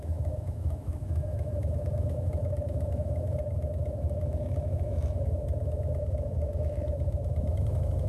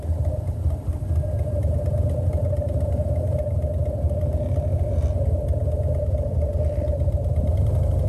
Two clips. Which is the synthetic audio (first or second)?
first